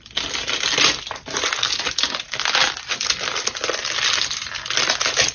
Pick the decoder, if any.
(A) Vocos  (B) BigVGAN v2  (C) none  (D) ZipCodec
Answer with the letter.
C